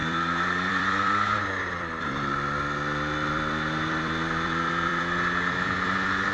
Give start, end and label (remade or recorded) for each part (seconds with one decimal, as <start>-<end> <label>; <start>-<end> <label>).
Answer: 0.0-6.3 remade